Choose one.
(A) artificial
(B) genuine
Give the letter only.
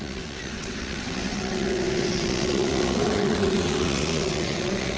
A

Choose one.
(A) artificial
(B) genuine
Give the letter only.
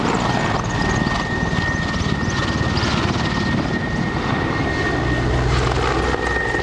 B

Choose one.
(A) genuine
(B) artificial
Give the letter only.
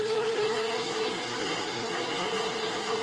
B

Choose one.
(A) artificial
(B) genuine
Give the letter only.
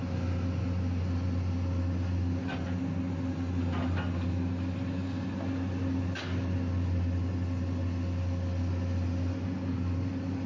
B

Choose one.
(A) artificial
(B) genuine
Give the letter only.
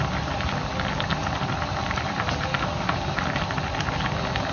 B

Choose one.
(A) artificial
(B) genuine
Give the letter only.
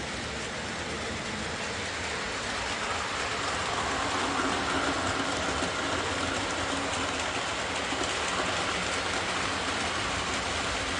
B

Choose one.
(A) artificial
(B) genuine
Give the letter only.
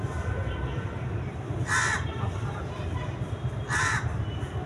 B